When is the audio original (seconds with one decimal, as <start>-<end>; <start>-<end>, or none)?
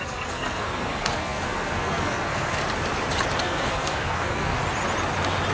2.6-3.4; 4.5-5.5